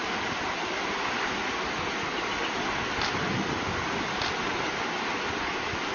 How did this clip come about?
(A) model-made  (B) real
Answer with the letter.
B